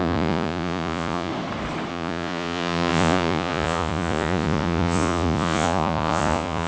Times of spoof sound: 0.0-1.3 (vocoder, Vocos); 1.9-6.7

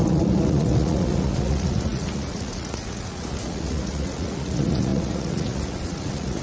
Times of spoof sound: 0.0-6.4 (vocoder, Vocos)

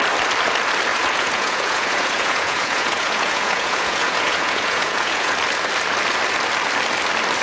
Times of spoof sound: 0.9-5.3 (vocoder, Vocos)

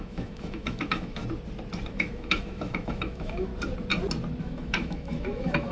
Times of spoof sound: 0.0-1.2 (autoencoder, DAC-VAE); 1.9-3.5; 4.4-5.7

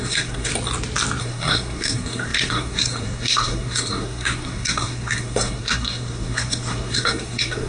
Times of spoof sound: 0.0-0.5 (codec, SNAC); 1.2-7.7